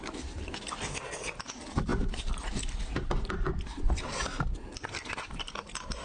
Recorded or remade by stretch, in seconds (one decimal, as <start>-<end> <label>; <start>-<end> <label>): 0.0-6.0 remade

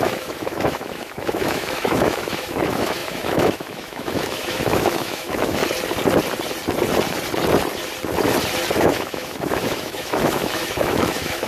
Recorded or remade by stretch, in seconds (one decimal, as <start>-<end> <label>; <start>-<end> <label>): 0.0-5.6 remade; 5.6-8.8 recorded; 8.8-11.5 remade

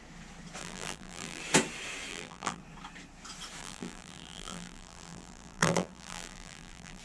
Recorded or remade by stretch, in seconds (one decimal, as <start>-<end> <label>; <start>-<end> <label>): 0.0-0.6 recorded; 0.6-1.4 remade; 1.4-2.1 recorded; 2.1-2.6 remade; 2.6-3.6 recorded; 3.6-7.0 remade

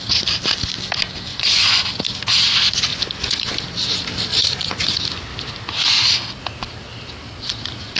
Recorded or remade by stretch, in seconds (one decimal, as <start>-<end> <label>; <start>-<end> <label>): 0.0-1.3 recorded; 1.3-1.8 remade; 1.8-2.9 recorded; 2.9-3.5 remade; 3.5-4.3 recorded; 4.3-5.0 remade; 5.0-8.0 recorded

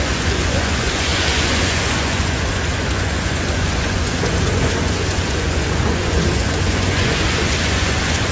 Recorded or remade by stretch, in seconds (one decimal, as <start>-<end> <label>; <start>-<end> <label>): 0.0-8.3 remade

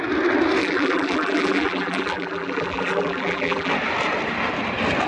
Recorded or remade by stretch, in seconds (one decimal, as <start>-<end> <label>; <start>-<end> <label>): 0.0-0.6 recorded; 0.6-3.7 remade; 3.7-5.1 recorded

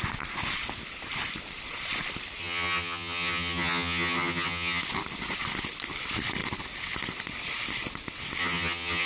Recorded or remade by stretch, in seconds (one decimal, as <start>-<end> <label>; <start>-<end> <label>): 0.0-2.4 recorded; 2.4-4.8 remade; 4.8-8.4 recorded; 8.4-9.1 remade